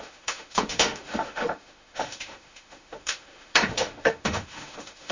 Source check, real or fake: fake